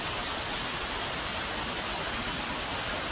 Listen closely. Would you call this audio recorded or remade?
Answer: recorded